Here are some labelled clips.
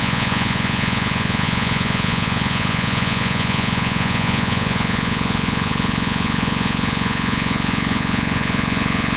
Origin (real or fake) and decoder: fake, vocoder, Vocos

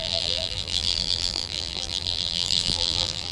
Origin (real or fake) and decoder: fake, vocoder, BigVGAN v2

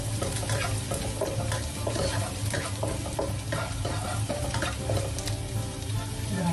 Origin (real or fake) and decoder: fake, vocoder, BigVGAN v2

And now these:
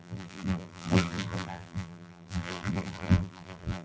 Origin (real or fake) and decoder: fake, vocoder, BigVGAN v2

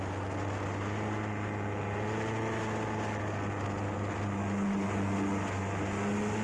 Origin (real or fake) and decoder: real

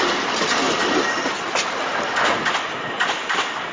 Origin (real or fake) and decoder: real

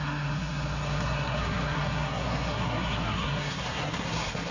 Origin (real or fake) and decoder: fake, codec, SNAC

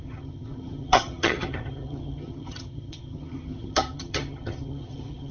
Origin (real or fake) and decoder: fake, vocoder, HiFi-GAN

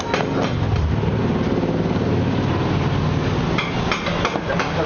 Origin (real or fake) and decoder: real